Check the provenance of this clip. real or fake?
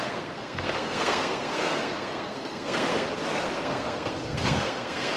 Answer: fake